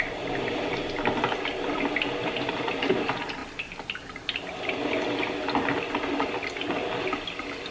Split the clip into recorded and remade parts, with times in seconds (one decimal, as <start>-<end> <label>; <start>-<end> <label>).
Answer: 0.0-7.7 recorded